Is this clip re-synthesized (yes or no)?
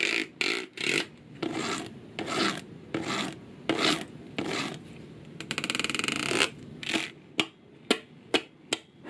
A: no